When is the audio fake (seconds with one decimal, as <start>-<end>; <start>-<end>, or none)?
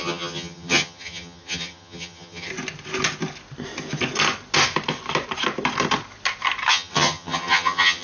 0.0-2.5; 6.7-8.0